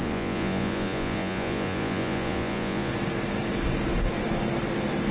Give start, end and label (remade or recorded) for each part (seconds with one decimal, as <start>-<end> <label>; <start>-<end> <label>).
0.0-2.9 remade; 2.9-5.1 recorded